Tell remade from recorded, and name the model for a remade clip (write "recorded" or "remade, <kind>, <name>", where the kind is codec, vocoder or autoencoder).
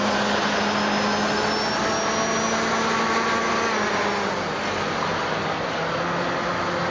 recorded